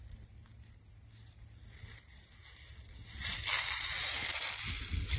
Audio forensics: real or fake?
real